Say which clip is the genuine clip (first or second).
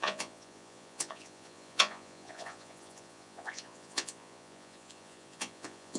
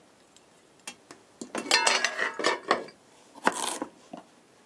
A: second